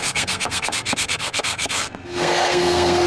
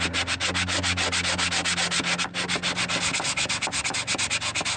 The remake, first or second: first